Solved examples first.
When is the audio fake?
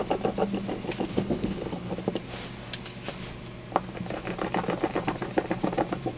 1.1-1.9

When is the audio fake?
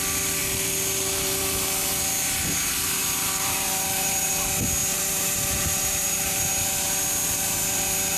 3.0-4.3; 4.8-6.5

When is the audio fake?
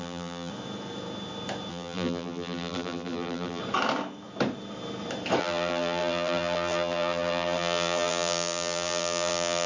0.0-0.5; 1.7-3.6; 5.4-9.7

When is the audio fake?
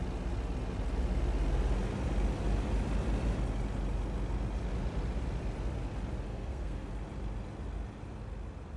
6.3-6.9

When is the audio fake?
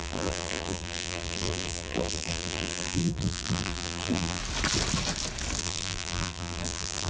0.0-4.4; 5.6-7.1